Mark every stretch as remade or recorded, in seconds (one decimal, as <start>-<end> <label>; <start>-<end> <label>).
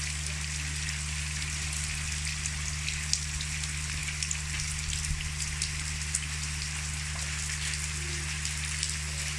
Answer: 0.0-9.4 recorded